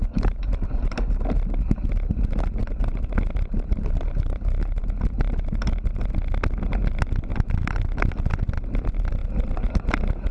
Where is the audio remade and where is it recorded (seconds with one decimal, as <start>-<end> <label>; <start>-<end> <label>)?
0.0-0.9 remade; 0.9-2.6 recorded; 2.6-5.6 remade; 5.6-7.3 recorded; 7.3-7.8 remade; 7.8-9.2 recorded; 9.2-9.7 remade; 9.7-10.3 recorded